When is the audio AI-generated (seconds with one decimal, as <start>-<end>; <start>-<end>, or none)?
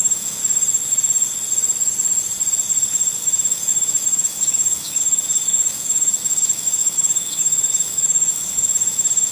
0.0-0.4; 3.2-9.3